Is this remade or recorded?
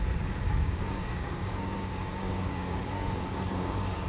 remade